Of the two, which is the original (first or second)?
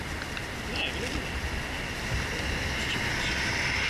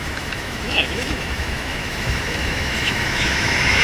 first